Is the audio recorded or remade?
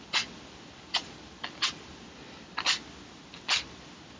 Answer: recorded